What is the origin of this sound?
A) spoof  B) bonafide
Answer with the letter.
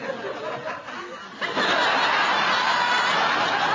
B